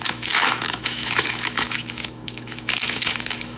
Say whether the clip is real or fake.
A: fake